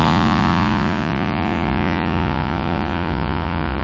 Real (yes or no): no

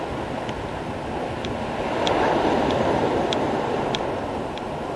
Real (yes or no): yes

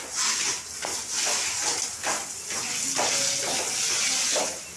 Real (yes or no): yes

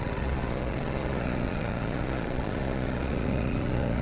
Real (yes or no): no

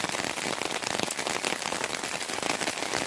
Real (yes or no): yes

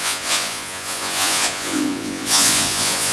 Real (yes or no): no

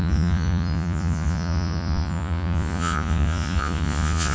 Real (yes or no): no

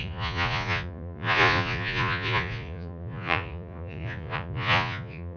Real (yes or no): no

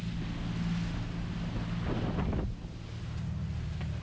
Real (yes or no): yes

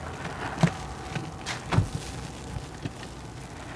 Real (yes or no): yes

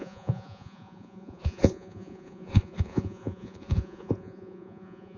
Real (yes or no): no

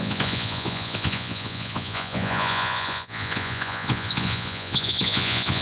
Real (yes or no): no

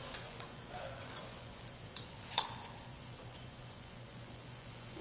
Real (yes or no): no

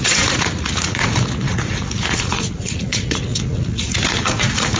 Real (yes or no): no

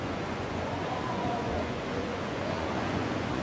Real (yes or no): no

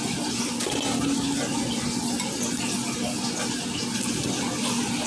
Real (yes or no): yes